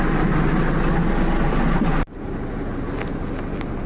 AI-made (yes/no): no